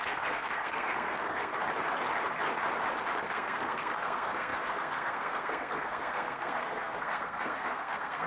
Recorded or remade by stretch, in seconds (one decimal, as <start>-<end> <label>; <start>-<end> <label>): 0.0-1.5 remade; 1.5-3.2 recorded; 3.2-8.3 remade